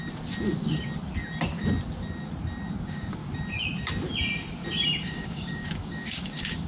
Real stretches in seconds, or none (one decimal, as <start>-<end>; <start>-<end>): 0.0-2.8; 3.2-5.0